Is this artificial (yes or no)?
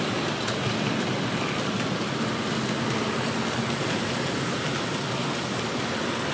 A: yes